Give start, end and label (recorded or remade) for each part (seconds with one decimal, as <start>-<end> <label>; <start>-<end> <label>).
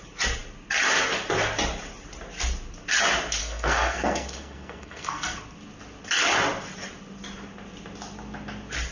0.0-3.4 recorded; 3.4-5.4 remade; 5.4-8.9 recorded